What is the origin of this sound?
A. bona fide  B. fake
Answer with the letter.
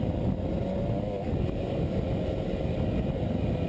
A